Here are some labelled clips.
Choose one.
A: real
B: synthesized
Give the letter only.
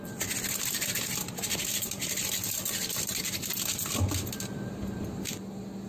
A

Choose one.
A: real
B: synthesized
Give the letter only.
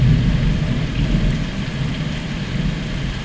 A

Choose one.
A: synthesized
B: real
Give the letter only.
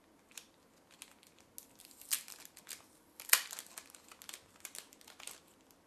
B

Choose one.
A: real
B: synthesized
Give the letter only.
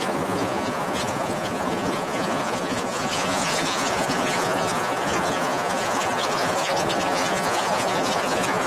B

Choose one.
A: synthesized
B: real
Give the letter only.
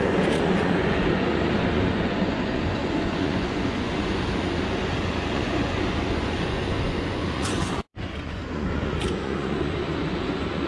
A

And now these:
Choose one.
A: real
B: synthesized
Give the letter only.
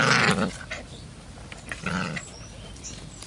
A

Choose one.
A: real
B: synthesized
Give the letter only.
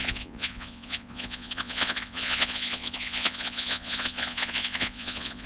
B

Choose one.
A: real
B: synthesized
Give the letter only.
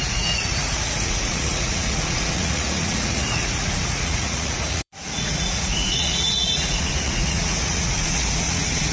B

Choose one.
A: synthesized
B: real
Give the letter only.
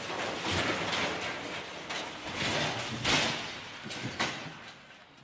B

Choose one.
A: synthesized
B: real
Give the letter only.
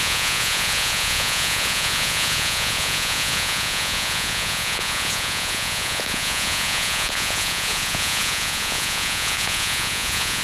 A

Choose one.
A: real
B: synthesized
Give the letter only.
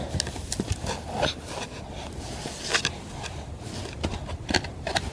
A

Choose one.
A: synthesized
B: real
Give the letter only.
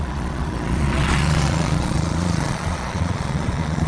A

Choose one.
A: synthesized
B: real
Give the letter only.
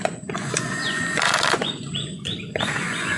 A